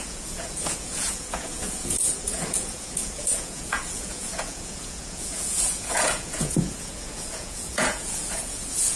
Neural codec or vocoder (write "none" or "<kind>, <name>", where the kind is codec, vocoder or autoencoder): vocoder, Vocos